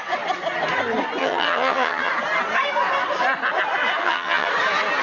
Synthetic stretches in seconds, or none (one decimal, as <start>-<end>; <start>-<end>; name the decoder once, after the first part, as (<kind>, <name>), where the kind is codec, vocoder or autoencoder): 1.2-2.1 (vocoder, HiFi-GAN); 4.0-4.5